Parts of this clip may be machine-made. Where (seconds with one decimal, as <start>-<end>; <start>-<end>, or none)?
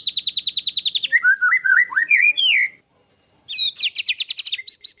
1.6-2.4